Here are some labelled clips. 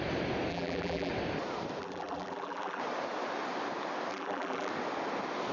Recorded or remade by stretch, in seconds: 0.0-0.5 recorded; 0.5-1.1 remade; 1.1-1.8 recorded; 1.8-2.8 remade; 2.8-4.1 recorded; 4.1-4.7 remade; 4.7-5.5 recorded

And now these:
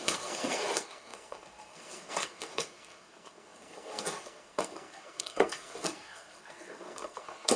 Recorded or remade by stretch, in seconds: 0.0-7.6 remade

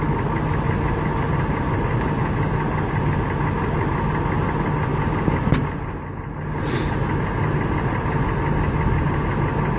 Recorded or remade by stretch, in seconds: 0.0-9.8 recorded

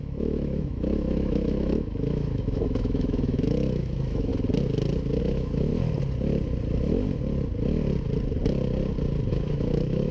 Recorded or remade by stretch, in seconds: 0.0-4.3 remade; 4.3-5.2 recorded; 5.2-5.7 remade; 5.7-9.3 recorded; 9.3-10.1 remade

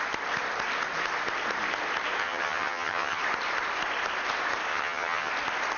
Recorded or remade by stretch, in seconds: 0.0-2.2 recorded; 2.2-3.2 remade; 3.2-4.7 recorded; 4.7-5.3 remade; 5.3-5.8 recorded

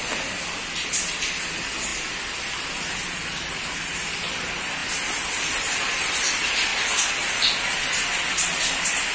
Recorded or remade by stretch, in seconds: 0.0-9.1 recorded

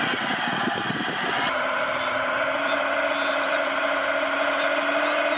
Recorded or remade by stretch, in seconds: 0.0-0.6 recorded; 0.6-3.8 remade; 3.8-5.4 recorded